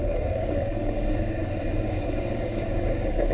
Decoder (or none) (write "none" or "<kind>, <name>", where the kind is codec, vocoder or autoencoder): codec, DAC